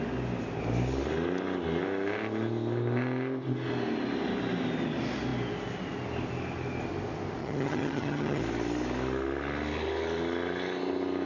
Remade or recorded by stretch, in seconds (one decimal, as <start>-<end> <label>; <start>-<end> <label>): 0.0-7.4 recorded; 7.4-8.4 remade; 8.4-11.3 recorded